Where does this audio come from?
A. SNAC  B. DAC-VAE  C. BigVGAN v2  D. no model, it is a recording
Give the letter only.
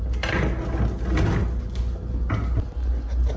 D